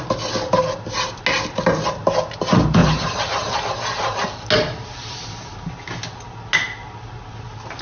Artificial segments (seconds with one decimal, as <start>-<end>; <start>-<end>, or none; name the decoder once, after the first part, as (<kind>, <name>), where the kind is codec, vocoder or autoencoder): none